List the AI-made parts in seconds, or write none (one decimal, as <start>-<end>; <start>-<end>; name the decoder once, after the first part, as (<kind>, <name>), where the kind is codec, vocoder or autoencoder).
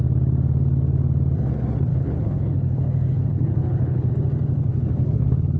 1.9-4.1 (codec, HILCodec); 4.7-5.6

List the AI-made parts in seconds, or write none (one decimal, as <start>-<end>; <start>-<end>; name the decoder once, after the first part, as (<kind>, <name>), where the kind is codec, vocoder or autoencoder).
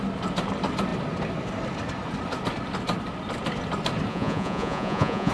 4.1-5.3 (vocoder, Vocos)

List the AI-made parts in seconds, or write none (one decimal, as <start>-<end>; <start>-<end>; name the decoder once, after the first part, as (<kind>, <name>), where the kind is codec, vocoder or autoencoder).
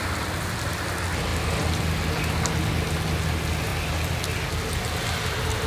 none